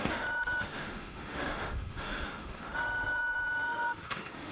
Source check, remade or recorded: remade